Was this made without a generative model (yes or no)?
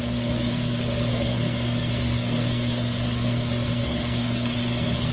no